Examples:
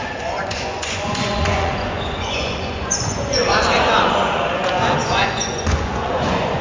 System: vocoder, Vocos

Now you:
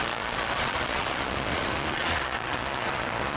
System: vocoder, Vocos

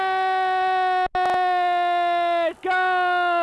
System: none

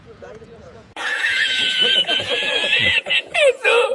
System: vocoder, Vocos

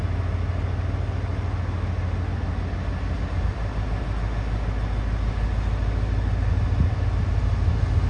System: none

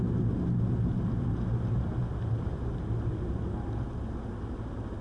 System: none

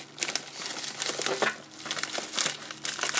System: none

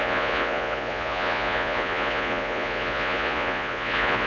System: vocoder, Vocos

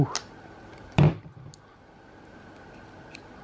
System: none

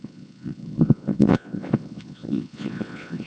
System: vocoder, Vocos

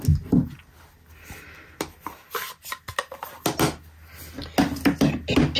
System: none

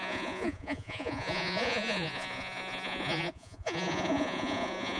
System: vocoder, Vocos